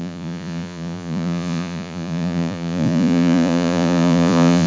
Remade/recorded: remade